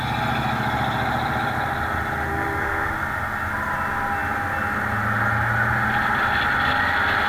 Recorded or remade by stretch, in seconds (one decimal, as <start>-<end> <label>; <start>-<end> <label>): 0.0-2.3 recorded; 2.3-2.9 remade; 2.9-7.3 recorded